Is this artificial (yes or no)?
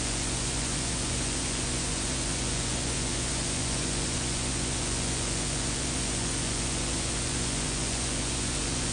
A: yes